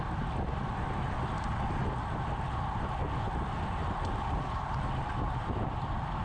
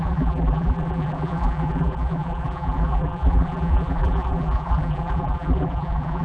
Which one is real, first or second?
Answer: first